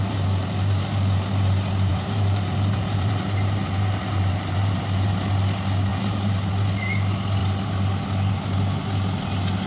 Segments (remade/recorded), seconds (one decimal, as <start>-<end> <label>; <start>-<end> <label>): 0.0-1.9 recorded; 1.9-5.2 remade; 5.2-5.9 recorded; 5.9-6.5 remade; 6.5-9.7 recorded